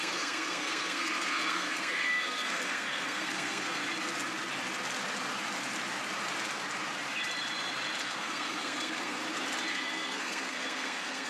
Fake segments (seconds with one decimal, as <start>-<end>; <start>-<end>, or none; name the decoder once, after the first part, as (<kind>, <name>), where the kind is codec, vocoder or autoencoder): 0.0-3.8 (codec, SNAC); 8.0-9.2; 9.7-11.3